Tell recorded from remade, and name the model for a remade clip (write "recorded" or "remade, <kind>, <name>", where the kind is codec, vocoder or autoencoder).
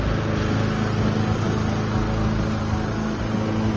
recorded